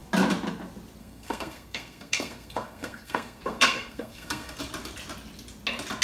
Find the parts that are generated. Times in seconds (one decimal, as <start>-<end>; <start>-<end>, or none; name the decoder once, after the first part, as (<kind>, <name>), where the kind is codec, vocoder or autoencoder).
1.0-4.6 (codec, SNAC)